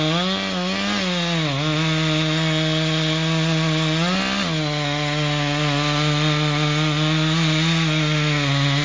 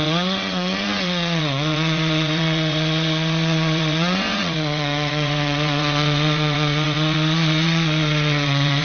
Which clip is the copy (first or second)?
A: second